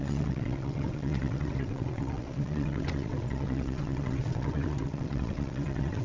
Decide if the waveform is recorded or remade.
remade